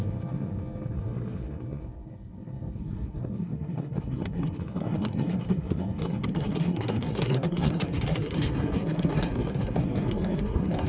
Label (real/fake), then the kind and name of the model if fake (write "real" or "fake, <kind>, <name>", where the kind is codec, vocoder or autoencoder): fake, codec, SNAC